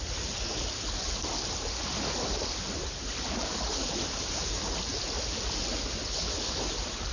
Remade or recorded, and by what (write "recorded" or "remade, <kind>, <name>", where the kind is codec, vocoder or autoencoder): recorded